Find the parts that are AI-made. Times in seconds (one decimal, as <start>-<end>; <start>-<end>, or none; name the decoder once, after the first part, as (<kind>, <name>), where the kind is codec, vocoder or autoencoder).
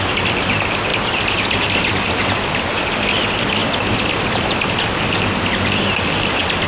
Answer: 0.9-2.2 (vocoder, BigVGAN v2); 3.6-5.1